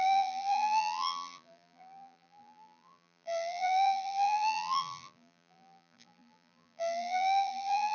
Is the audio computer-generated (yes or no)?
yes